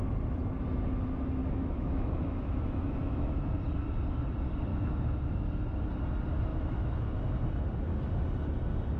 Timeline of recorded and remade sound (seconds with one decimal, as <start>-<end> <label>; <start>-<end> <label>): 0.0-1.4 recorded; 1.4-3.4 remade; 3.4-4.7 recorded; 4.7-5.5 remade; 5.5-6.5 recorded; 6.5-7.1 remade; 7.1-9.0 recorded

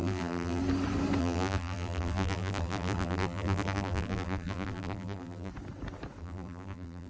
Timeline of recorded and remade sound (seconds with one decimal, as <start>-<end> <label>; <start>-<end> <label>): 0.0-0.6 remade; 0.6-1.2 recorded; 1.2-5.5 remade; 5.5-6.2 recorded; 6.2-7.1 remade

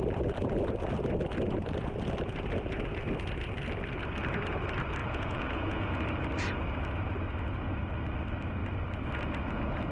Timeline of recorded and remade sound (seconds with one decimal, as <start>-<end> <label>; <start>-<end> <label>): 0.0-5.0 recorded; 5.0-6.0 remade; 6.0-9.9 recorded